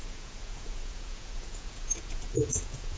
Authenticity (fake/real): fake